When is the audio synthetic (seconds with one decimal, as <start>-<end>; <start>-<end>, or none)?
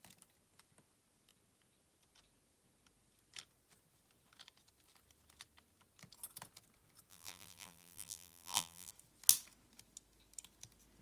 7.1-8.9